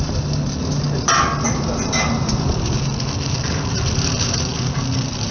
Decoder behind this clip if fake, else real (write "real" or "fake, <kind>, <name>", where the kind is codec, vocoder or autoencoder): real